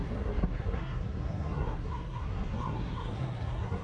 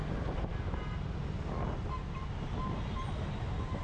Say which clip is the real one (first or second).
second